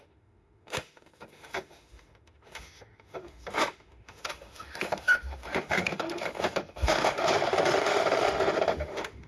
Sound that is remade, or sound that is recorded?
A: remade